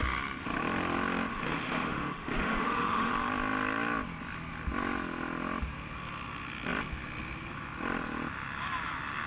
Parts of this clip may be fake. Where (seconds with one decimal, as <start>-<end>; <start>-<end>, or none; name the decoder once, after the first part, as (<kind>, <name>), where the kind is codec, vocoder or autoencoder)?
1.3-3.1 (autoencoder, DAC-VAE)